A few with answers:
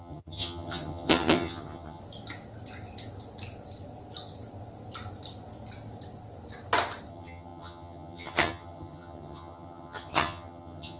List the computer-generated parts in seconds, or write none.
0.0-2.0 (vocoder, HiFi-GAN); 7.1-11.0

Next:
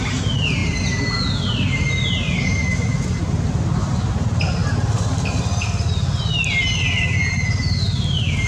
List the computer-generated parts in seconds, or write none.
none

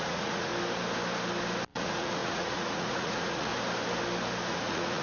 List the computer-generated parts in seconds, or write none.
0.0-0.5 (vocoder, Vocos); 1.7-3.5; 4.5-5.0

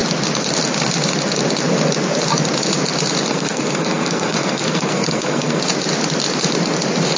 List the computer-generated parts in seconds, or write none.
3.3-5.6 (codec, SNAC)

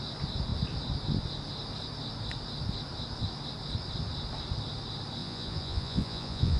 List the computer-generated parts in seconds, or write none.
5.2-6.6 (vocoder, Vocos)

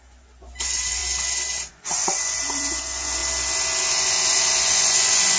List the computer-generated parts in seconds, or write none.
0.0-1.0 (vocoder, Vocos); 1.7-3.2; 3.9-5.4